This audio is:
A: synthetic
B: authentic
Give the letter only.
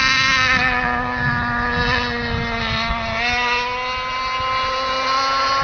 B